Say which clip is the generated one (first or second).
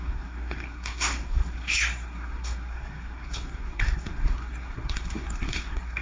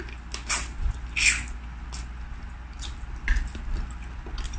first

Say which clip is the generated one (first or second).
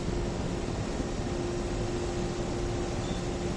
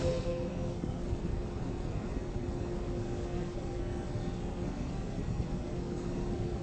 second